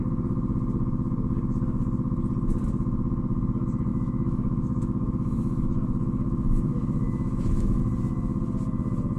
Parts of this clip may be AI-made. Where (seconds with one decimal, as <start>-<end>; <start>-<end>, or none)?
3.9-7.8